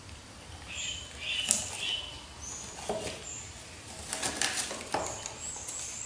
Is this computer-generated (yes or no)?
no